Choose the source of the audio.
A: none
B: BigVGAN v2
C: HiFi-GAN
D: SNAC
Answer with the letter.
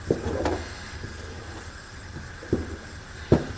A